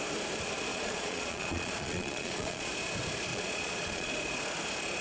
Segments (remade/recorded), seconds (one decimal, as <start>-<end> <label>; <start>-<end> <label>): 0.0-0.7 recorded; 0.7-2.7 remade; 2.7-3.3 recorded; 3.3-4.1 remade; 4.1-5.0 recorded